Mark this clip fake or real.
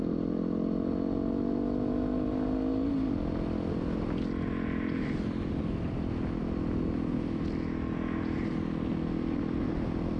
real